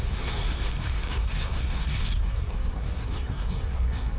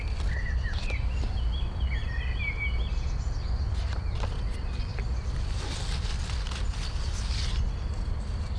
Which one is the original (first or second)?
second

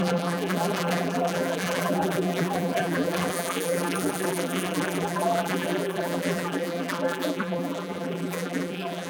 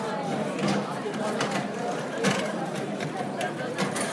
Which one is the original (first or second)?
second